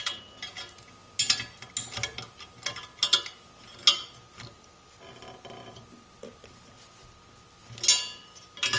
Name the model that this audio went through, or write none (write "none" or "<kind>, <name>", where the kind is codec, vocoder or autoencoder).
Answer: none